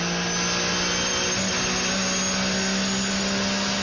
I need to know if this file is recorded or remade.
recorded